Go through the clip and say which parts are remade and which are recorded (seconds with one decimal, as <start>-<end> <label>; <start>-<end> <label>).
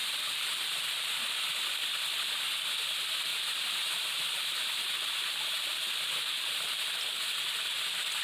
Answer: 0.0-0.6 remade; 0.6-3.3 recorded; 3.3-6.1 remade; 6.1-8.2 recorded